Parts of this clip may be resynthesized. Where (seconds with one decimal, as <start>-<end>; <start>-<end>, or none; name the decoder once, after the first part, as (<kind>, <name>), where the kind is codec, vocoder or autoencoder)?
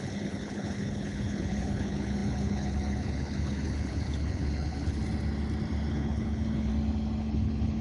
0.0-5.0 (codec, HILCodec); 5.9-6.7; 7.2-7.8